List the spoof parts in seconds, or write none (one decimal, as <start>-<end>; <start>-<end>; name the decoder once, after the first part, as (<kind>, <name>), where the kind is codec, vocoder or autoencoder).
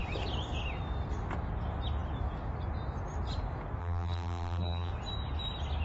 3.8-4.9 (vocoder, BigVGAN v2)